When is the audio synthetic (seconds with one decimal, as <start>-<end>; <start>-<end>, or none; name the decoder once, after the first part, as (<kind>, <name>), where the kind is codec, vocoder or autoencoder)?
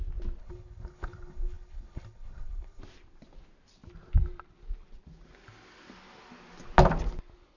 0.4-2.8 (codec, HILCodec)